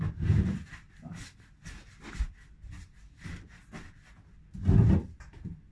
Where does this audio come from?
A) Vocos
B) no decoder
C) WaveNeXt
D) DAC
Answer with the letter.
B